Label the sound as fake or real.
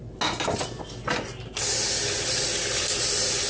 real